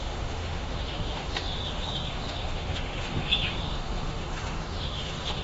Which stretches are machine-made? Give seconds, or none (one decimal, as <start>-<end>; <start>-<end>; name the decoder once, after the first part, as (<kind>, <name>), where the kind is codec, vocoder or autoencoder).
0.0-5.4 (autoencoder, DAC-VAE)